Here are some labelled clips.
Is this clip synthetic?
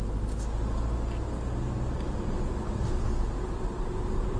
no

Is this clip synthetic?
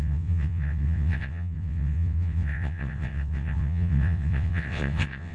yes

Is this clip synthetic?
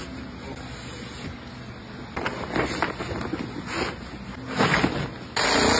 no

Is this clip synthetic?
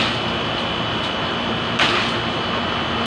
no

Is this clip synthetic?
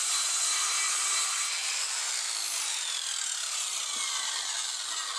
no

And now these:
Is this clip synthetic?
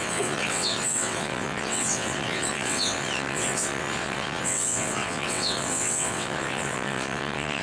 yes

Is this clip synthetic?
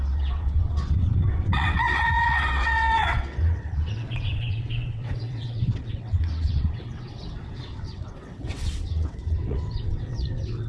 yes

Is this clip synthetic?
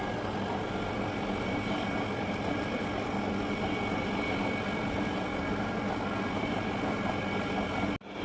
no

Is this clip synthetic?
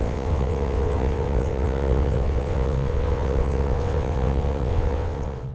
yes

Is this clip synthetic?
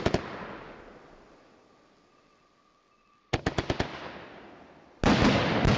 no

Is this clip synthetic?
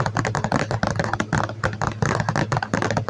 no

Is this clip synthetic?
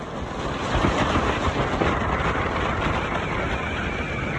no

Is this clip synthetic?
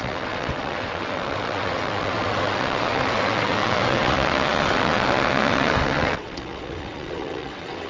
yes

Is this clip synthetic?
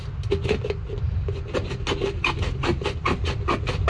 no